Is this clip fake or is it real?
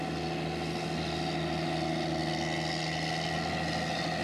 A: real